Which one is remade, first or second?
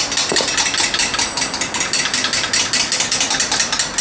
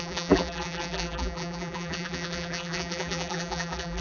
second